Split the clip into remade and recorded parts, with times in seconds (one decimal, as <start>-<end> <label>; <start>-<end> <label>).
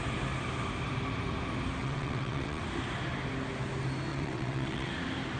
0.0-1.8 recorded; 1.8-2.6 remade; 2.6-4.1 recorded; 4.1-4.9 remade; 4.9-5.4 recorded